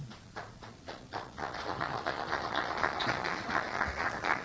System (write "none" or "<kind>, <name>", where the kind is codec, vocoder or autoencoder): vocoder, Vocos